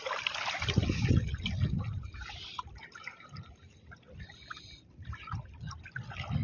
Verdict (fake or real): real